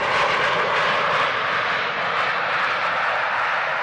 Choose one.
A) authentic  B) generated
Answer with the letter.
A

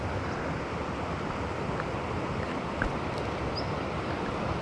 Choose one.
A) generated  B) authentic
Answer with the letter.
B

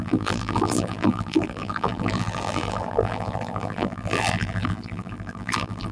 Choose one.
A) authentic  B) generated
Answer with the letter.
B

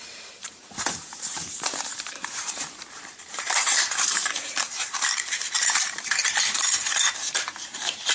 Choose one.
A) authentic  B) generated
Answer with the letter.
B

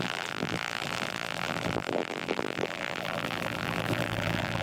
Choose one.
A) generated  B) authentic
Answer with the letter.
A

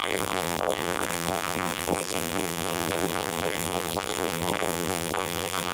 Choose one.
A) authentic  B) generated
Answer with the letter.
B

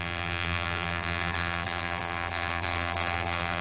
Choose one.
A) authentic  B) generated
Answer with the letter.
B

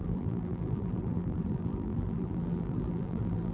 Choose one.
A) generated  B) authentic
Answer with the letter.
A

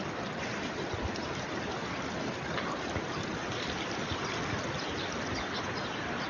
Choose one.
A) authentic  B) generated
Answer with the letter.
B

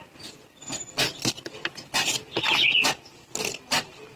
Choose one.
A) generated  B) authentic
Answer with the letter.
B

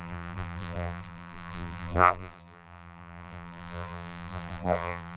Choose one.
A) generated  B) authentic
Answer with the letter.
A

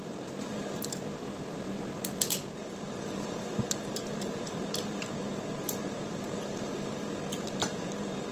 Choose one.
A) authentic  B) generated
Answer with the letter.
B